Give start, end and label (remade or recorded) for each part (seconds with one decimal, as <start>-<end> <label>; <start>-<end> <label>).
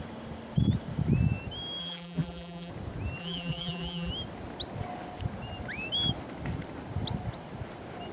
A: 0.0-1.8 recorded; 1.8-2.7 remade; 2.7-3.2 recorded; 3.2-4.1 remade; 4.1-8.1 recorded